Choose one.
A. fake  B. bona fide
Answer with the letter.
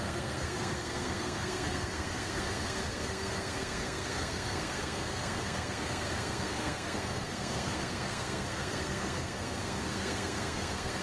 A